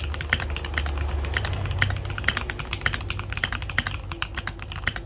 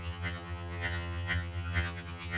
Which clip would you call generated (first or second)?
second